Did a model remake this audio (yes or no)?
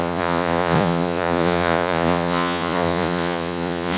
yes